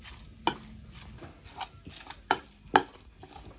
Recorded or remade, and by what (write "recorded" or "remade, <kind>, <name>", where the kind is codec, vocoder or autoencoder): recorded